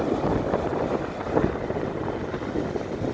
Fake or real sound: real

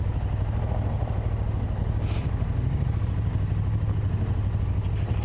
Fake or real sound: real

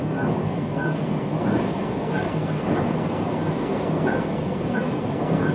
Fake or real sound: fake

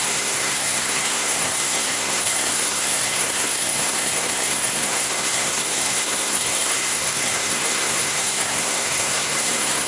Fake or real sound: fake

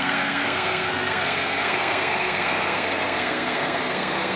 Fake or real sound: fake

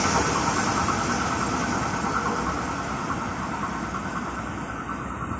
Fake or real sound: real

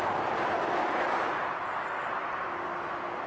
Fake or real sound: real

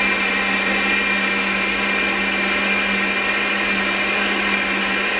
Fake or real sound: real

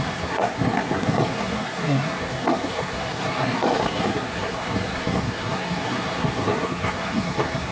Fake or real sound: fake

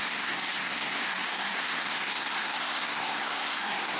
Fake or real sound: fake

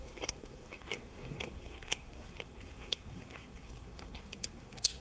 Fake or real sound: fake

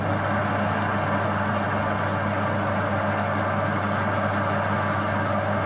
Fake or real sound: real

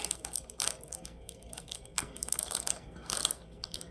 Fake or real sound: fake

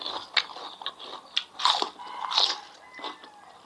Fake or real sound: real